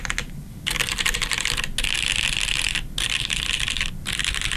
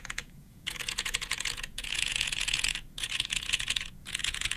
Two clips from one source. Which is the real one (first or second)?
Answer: first